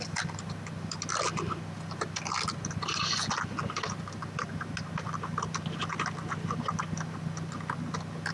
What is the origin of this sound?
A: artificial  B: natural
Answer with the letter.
B